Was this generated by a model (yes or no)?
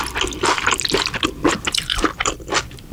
no